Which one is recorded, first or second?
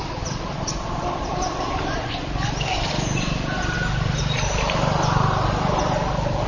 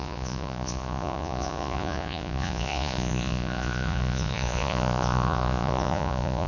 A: first